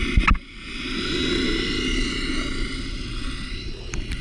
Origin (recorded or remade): recorded